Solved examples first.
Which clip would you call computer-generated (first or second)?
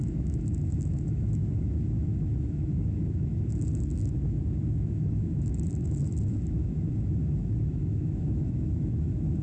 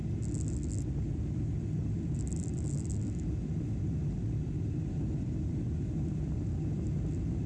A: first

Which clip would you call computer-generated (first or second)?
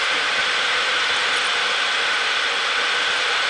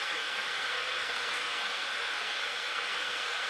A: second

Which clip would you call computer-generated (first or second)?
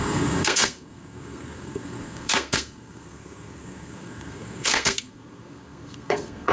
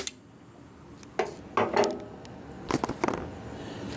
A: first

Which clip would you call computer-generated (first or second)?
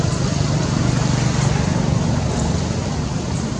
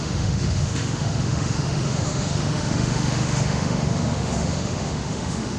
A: second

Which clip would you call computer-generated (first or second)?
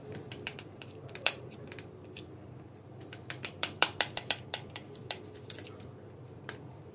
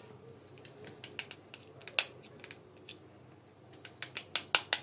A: first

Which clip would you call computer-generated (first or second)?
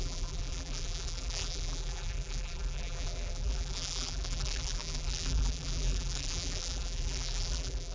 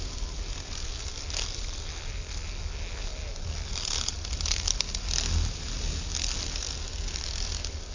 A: first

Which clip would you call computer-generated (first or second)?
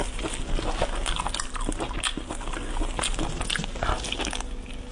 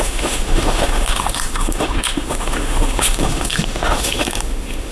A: second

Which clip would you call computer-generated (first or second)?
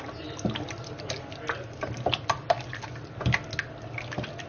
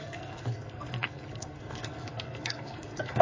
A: second